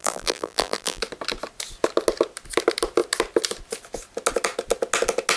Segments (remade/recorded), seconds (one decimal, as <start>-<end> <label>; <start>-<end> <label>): 0.0-1.0 remade; 1.0-5.4 recorded